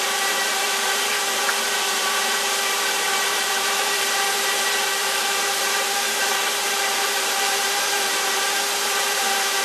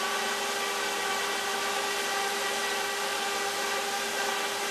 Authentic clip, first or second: second